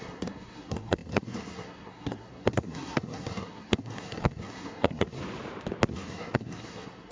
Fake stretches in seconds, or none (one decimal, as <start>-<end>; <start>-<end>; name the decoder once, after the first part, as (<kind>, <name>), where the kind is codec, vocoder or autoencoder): 0.0-5.2 (codec, SNAC); 5.9-7.1